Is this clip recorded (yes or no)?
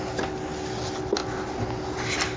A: yes